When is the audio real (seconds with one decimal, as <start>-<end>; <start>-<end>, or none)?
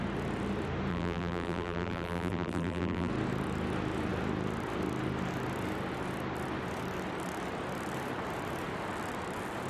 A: 0.0-0.9; 3.1-9.7